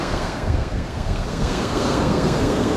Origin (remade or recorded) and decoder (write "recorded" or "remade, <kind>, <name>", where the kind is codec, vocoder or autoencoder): remade, codec, SNAC